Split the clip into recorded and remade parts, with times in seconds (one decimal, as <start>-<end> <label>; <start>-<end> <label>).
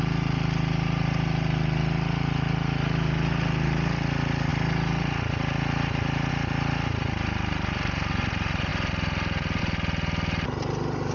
0.0-11.1 recorded